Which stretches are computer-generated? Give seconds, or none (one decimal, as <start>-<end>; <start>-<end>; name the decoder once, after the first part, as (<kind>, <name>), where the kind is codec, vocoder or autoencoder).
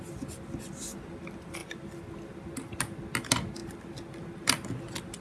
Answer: none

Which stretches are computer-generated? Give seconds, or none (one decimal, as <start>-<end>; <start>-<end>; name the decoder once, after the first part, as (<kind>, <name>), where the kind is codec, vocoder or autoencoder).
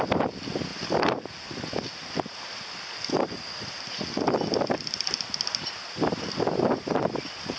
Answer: none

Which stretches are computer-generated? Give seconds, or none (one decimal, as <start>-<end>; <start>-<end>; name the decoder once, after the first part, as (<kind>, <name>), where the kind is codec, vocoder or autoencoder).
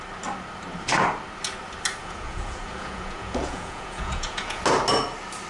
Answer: 2.0-4.6 (vocoder, Vocos)